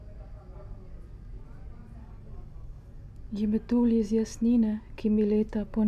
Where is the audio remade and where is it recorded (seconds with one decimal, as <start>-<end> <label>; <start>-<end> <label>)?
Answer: 0.0-2.0 recorded; 2.0-3.1 remade; 3.1-5.9 recorded